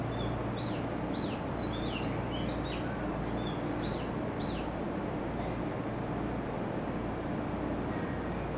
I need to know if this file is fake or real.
real